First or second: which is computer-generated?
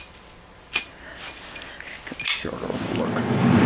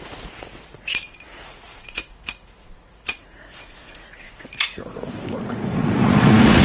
second